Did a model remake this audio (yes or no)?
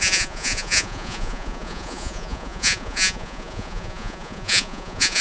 yes